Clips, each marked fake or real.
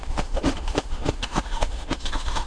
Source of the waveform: fake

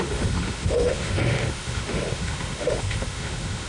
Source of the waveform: fake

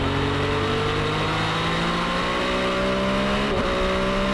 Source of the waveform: real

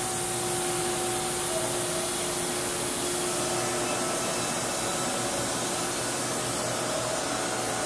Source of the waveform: real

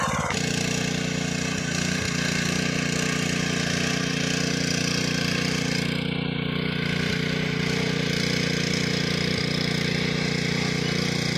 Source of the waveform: real